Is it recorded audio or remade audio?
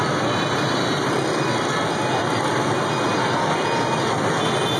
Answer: recorded